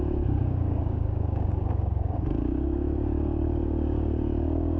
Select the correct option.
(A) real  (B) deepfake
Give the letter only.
B